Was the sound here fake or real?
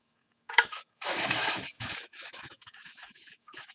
fake